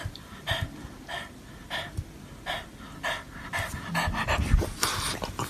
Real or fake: real